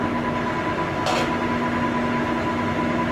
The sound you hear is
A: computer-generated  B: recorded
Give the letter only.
B